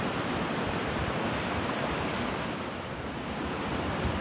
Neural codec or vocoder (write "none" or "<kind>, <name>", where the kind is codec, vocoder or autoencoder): none